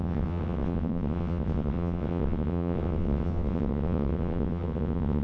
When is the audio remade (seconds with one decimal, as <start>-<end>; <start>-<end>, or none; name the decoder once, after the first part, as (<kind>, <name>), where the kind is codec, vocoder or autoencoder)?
0.0-5.2 (vocoder, WaveNeXt)